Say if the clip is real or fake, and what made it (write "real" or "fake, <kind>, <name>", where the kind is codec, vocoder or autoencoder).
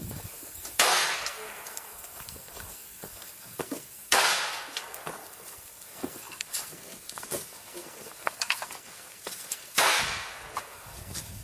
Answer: fake, codec, SNAC